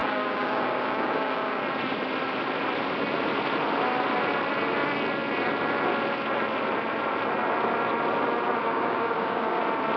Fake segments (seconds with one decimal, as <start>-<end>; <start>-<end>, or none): 0.0-1.6; 8.6-9.6